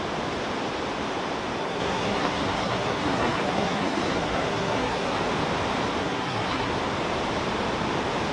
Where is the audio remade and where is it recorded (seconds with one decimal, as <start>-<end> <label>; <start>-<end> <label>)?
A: 0.0-1.6 recorded; 1.6-5.2 remade; 5.2-6.0 recorded; 6.0-6.7 remade; 6.7-8.3 recorded

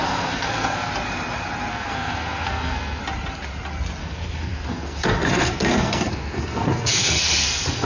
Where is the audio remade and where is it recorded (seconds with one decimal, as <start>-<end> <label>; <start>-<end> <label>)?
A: 0.0-0.9 remade; 0.9-1.7 recorded; 1.7-3.0 remade; 3.0-4.0 recorded; 4.0-7.9 remade

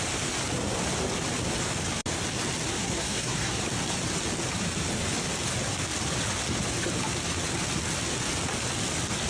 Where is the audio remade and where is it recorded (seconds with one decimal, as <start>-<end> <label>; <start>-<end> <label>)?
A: 0.0-2.7 recorded; 2.7-3.6 remade; 3.6-9.3 recorded

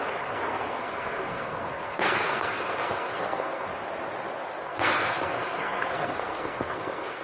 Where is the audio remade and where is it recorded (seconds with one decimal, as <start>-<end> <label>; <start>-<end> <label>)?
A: 0.0-3.7 remade; 3.7-4.6 recorded; 4.6-7.2 remade

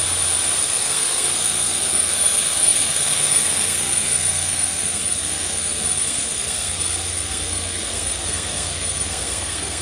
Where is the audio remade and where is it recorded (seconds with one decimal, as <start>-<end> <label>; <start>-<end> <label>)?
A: 0.0-0.6 recorded; 0.6-9.8 remade

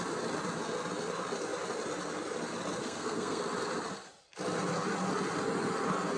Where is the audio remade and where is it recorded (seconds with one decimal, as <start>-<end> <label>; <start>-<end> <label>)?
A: 0.0-2.8 recorded; 2.8-3.4 remade; 3.4-6.2 recorded

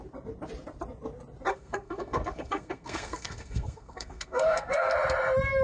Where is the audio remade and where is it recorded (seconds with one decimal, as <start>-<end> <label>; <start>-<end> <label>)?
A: 0.0-1.5 recorded; 1.5-4.9 remade; 4.9-5.6 recorded

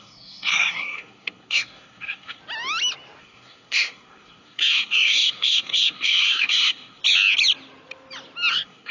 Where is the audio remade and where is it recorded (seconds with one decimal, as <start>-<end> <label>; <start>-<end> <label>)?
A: 0.0-2.4 remade; 2.4-3.2 recorded; 3.2-7.0 remade; 7.0-8.5 recorded; 8.5-8.9 remade